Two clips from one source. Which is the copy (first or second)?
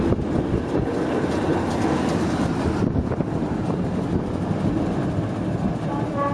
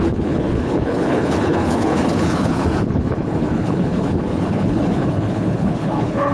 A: second